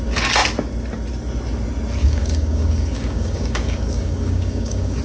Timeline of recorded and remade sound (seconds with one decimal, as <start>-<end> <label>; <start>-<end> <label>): 0.0-2.0 recorded; 2.0-5.0 remade